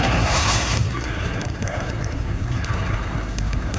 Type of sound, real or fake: fake